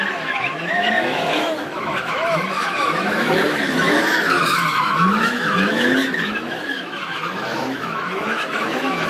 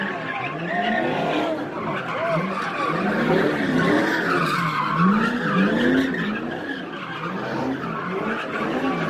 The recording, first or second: second